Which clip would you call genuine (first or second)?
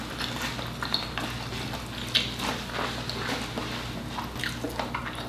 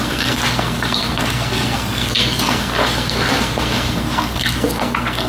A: first